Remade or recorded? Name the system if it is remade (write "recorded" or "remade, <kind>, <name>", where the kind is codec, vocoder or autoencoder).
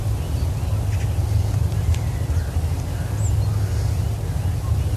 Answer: recorded